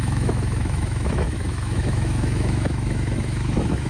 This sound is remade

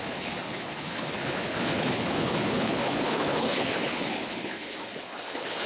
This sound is remade